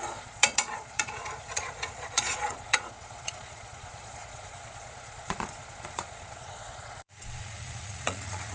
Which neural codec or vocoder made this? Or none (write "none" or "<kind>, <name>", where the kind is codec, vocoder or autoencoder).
vocoder, Vocos